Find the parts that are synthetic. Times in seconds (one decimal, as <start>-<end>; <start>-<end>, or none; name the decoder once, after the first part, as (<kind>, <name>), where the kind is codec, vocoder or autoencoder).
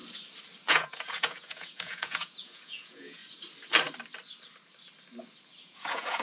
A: 0.7-3.2 (vocoder, Vocos); 5.6-6.2